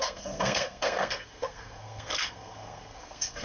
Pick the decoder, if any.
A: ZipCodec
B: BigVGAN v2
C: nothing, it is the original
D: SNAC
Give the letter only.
D